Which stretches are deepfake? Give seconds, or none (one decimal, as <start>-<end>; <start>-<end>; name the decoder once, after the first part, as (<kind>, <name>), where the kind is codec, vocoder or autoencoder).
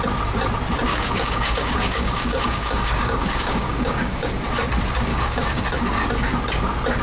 0.9-4.3 (codec, DAC); 5.1-5.6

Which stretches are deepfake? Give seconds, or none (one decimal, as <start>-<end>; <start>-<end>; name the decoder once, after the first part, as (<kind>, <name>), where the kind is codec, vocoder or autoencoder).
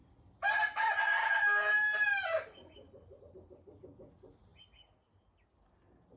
none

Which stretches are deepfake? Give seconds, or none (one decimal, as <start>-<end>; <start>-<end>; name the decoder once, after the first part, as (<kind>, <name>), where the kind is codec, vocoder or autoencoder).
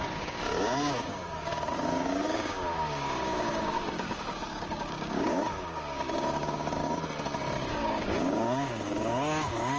0.0-6.8 (codec, DAC); 7.7-9.8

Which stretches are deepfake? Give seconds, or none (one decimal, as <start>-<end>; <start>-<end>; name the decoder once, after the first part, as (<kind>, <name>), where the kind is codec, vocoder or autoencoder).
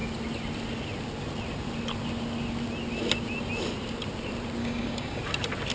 4.6-5.2 (codec, DAC)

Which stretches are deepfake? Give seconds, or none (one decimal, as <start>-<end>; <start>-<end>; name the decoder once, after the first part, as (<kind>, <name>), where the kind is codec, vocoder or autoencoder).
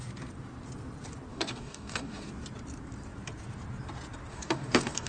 1.3-2.3 (codec, DAC); 4.3-5.1